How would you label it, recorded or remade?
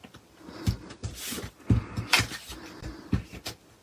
remade